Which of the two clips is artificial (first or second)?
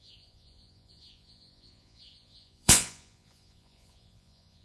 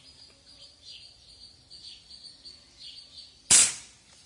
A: first